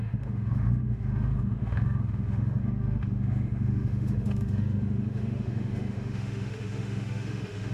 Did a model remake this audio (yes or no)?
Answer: yes